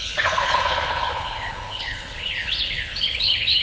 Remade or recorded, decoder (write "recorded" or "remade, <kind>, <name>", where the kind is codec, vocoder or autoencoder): remade, codec, HILCodec